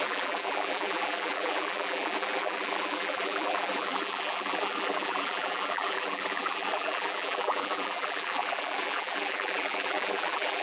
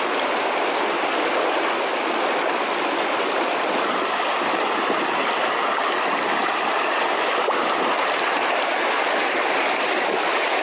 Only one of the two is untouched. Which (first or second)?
second